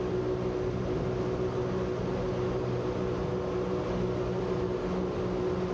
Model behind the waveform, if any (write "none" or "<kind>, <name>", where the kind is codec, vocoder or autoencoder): none